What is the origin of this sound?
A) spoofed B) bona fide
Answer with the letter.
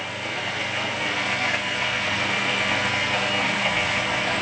A